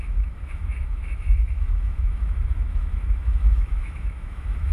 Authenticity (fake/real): fake